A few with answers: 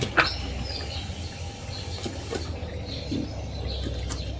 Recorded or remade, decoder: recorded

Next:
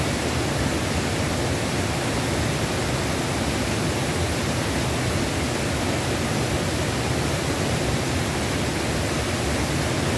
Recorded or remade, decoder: recorded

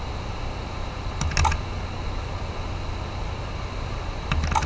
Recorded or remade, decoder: recorded